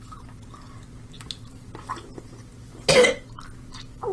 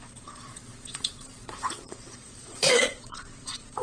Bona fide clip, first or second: first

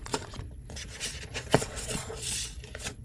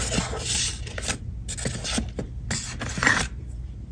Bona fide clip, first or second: second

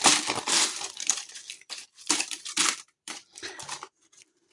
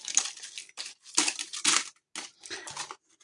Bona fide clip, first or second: second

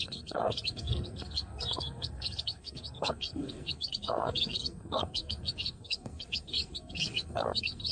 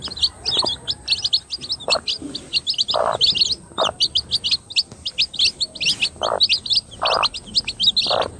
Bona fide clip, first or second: second